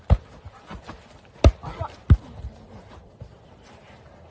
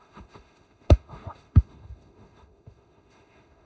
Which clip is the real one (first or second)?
first